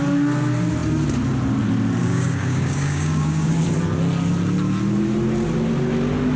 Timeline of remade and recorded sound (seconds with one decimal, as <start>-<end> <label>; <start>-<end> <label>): 0.0-2.0 recorded; 2.0-3.6 remade; 3.6-6.4 recorded